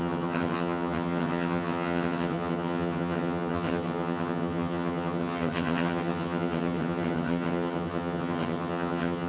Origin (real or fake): fake